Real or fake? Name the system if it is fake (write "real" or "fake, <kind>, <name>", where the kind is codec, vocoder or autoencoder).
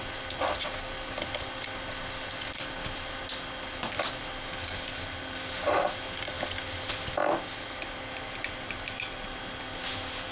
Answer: real